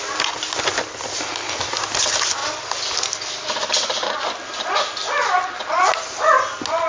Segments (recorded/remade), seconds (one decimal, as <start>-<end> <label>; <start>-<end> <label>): 0.0-6.9 recorded